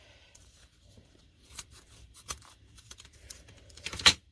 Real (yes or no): no